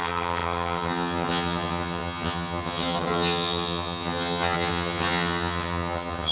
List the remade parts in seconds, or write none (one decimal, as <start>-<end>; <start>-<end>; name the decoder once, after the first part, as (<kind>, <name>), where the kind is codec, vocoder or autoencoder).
0.0-6.3 (vocoder, HiFi-GAN)